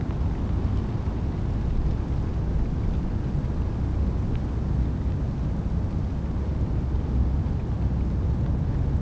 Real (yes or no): yes